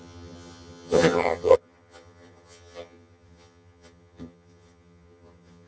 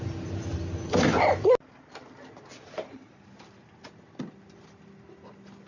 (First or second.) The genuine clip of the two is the second